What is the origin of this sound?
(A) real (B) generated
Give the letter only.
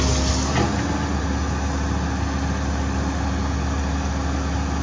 A